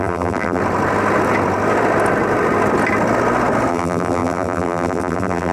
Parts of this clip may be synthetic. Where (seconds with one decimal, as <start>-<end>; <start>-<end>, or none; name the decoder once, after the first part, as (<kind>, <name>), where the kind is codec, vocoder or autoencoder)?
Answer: 0.0-0.6 (vocoder, BigVGAN v2); 3.7-5.5